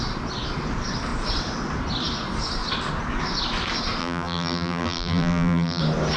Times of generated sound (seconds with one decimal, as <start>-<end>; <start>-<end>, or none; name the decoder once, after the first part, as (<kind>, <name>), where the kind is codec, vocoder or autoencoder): 4.0-5.8 (vocoder, BigVGAN v2)